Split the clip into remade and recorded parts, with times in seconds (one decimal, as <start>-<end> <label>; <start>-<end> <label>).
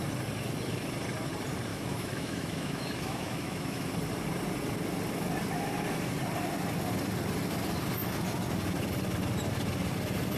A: 0.0-1.7 recorded; 1.7-3.9 remade; 3.9-10.4 recorded